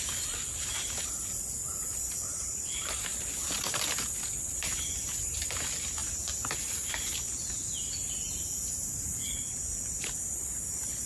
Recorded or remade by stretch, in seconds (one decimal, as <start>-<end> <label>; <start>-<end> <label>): 0.0-3.1 remade; 3.1-4.6 recorded; 4.6-11.1 remade